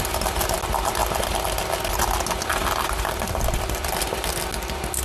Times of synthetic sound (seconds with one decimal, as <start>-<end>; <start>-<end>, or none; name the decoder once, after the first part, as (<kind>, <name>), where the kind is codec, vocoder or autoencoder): none